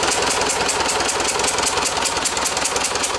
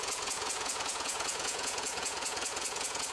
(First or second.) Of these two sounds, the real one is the first